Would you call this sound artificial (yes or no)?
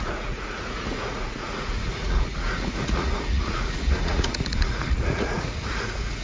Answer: yes